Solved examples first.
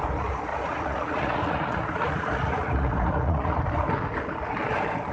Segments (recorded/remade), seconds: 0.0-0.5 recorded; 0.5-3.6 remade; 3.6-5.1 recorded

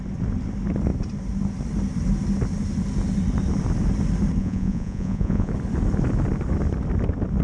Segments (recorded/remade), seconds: 0.0-4.4 recorded; 4.4-5.5 remade; 5.5-7.4 recorded

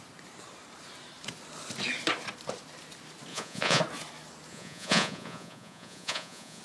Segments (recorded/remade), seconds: 0.0-3.3 recorded; 3.3-3.8 remade; 3.8-4.5 recorded; 4.5-6.6 remade

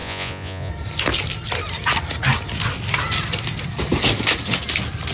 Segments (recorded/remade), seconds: 0.0-0.7 remade; 0.7-5.1 recorded

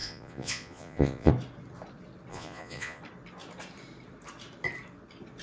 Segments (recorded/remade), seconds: 0.0-1.3 remade; 1.3-2.3 recorded; 2.3-3.0 remade; 3.0-5.4 recorded

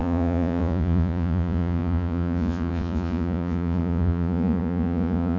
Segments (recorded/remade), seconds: 0.0-5.4 remade

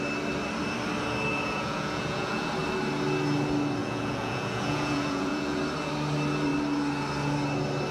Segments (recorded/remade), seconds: 0.0-1.3 recorded; 1.3-2.5 remade; 2.5-3.8 recorded; 3.8-5.6 remade; 5.6-7.9 recorded